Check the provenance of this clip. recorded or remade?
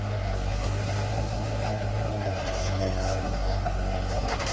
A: remade